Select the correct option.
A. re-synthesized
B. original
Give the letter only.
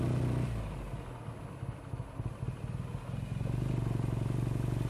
B